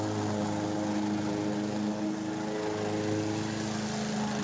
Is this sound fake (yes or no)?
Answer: no